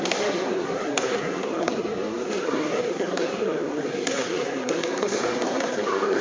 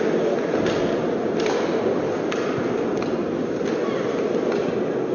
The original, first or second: second